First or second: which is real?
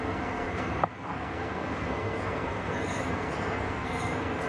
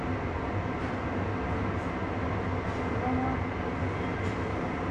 second